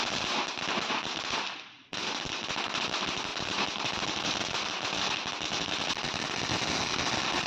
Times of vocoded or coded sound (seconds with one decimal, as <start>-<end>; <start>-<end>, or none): none